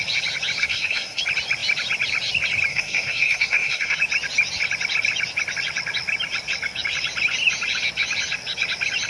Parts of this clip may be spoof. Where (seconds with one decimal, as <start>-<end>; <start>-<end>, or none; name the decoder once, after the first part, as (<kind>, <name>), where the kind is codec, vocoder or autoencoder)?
0.6-1.2 (codec, SNAC); 2.7-4.0

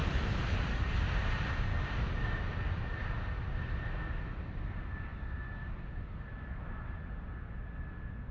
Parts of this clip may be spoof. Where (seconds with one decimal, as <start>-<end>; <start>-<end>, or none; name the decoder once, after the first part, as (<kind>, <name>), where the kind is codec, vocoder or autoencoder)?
none

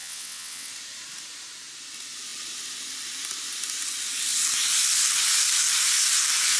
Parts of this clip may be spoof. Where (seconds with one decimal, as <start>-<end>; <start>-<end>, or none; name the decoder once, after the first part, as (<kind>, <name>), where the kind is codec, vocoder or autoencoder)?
0.0-0.7 (vocoder, WaveNeXt)

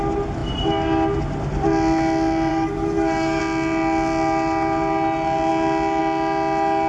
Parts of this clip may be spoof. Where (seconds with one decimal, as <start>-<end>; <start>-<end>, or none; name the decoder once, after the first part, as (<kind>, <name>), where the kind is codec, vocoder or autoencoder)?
2.5-3.4 (codec, DAC)

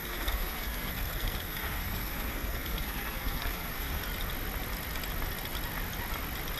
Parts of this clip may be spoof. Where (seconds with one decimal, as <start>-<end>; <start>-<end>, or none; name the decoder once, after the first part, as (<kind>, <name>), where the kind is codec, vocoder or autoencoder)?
0.0-4.0 (codec, SNAC)

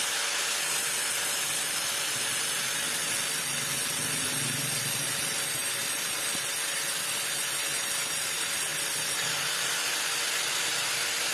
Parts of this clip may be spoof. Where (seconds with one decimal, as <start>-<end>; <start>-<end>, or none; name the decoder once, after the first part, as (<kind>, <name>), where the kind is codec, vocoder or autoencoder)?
none